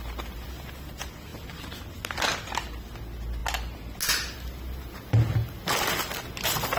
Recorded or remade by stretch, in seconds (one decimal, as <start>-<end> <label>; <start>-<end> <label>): 0.0-6.8 recorded